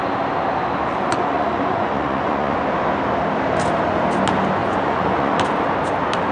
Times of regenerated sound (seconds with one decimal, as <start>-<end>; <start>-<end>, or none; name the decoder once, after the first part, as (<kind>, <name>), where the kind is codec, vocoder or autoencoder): 0.9-2.6 (vocoder, Vocos); 4.6-5.4